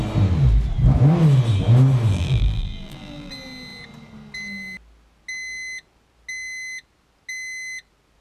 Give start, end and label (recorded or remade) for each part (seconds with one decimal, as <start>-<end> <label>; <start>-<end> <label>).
0.0-2.1 recorded; 2.1-3.3 remade; 3.3-8.2 recorded